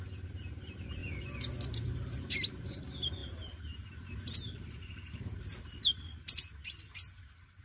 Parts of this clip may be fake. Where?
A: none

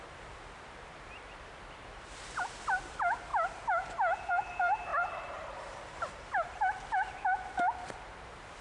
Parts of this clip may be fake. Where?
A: 0.0-3.3; 4.3-8.6

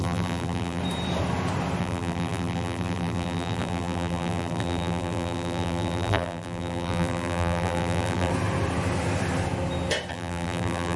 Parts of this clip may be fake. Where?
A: 0.0-0.8; 1.8-8.3; 10.1-11.0

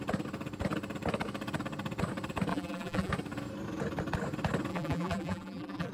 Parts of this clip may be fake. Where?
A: 2.5-3.1; 4.7-5.9

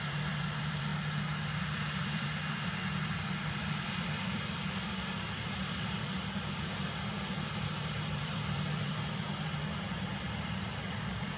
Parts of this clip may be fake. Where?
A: 0.0-0.9; 2.0-11.4